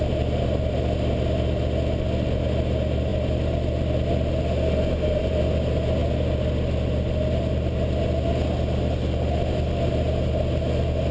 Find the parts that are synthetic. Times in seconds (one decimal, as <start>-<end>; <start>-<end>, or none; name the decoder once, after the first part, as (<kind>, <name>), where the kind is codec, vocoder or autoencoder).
none